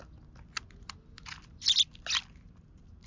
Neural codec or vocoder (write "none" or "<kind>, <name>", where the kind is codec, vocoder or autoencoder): none